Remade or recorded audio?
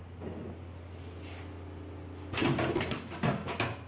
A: recorded